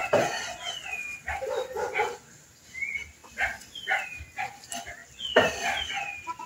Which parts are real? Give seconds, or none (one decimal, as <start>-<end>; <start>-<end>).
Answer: 0.0-6.5